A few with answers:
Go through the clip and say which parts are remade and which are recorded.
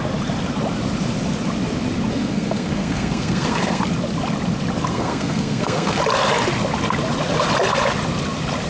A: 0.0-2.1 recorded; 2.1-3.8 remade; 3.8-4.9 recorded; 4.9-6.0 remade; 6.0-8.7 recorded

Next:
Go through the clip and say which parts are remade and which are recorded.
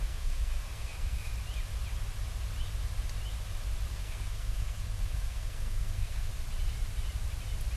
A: 0.0-1.3 remade; 1.3-3.9 recorded; 3.9-6.3 remade; 6.3-7.8 recorded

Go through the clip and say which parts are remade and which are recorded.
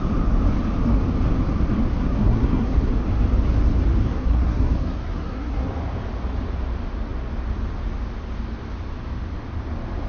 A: 0.0-1.9 recorded; 1.9-2.9 remade; 2.9-4.0 recorded; 4.0-5.7 remade; 5.7-10.1 recorded